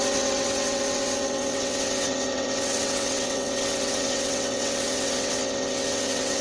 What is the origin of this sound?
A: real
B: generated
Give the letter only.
B